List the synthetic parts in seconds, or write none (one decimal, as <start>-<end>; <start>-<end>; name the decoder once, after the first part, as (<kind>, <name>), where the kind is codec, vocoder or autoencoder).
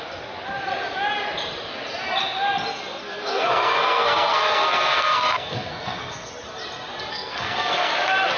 3.0-6.3 (codec, SNAC); 7.1-7.9